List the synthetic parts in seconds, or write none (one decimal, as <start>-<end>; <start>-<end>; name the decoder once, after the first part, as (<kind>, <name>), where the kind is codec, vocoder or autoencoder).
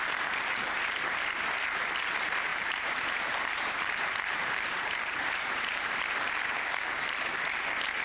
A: 2.5-6.0 (vocoder, BigVGAN v2)